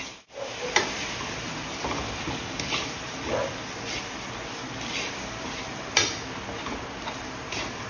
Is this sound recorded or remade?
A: remade